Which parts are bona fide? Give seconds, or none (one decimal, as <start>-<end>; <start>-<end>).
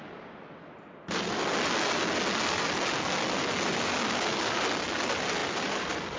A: 0.0-5.4